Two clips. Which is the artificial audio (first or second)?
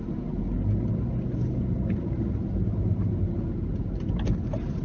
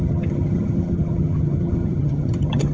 second